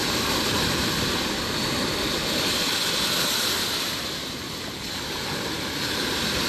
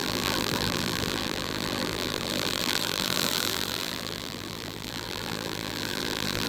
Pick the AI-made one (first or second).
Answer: second